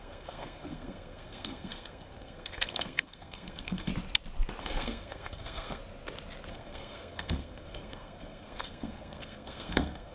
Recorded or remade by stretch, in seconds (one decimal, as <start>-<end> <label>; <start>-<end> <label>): 0.0-3.9 remade; 3.9-4.6 recorded; 4.6-5.8 remade; 5.8-6.5 recorded; 6.5-10.1 remade